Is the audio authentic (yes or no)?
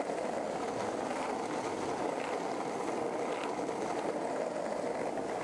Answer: yes